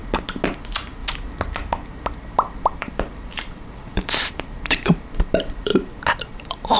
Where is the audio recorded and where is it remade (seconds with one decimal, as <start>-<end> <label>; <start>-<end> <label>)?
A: 0.0-0.6 recorded; 0.6-1.0 remade; 1.0-2.6 recorded; 2.6-5.7 remade; 5.7-6.3 recorded; 6.3-6.8 remade